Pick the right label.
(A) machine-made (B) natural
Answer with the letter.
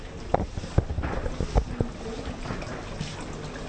B